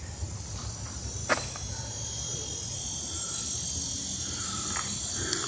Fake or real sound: real